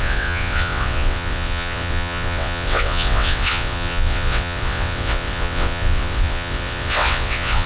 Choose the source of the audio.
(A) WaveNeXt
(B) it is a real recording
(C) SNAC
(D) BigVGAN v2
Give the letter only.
A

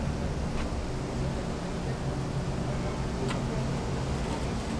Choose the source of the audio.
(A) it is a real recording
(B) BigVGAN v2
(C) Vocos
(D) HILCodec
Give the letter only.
A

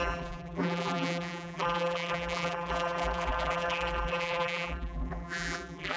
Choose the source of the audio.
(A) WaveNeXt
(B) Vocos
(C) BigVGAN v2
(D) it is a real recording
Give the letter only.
C